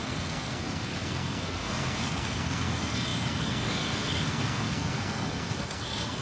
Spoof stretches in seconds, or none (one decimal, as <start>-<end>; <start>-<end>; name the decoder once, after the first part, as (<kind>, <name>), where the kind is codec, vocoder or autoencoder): 0.0-6.2 (codec, SNAC)